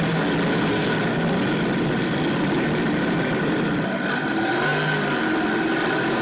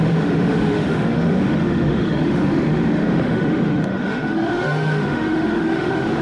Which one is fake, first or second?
second